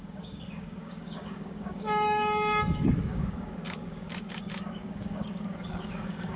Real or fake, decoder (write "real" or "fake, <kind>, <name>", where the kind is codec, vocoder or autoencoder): fake, codec, DAC